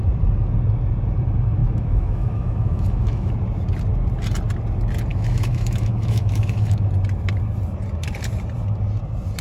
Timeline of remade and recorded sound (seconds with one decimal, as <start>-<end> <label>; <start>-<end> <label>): 0.0-1.6 recorded; 1.6-3.3 remade; 3.3-5.1 recorded; 5.1-6.9 remade; 6.9-9.4 recorded